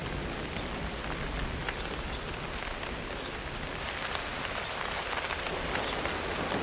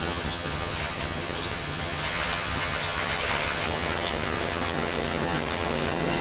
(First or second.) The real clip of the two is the first